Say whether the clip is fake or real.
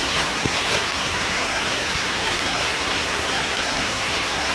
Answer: fake